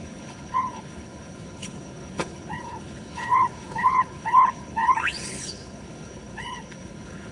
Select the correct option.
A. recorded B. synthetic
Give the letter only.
B